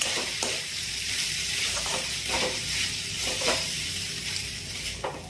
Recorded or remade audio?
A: remade